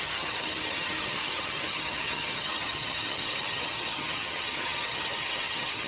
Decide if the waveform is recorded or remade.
remade